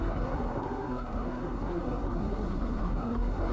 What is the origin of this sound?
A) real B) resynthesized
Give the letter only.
B